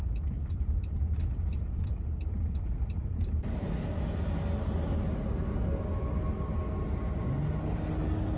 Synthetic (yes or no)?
no